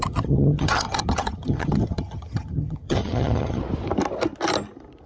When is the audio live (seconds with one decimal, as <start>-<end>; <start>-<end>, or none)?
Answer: 3.6-5.1